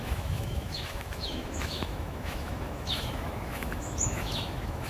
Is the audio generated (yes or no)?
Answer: yes